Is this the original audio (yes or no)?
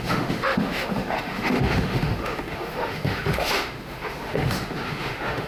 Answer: no